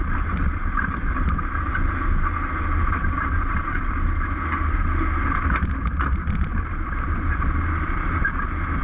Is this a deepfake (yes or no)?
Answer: no